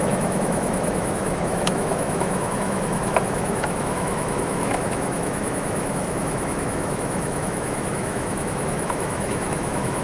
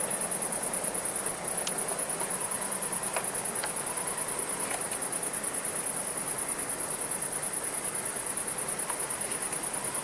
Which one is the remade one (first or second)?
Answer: first